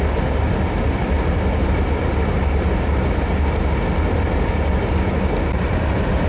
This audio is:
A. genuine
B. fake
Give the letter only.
A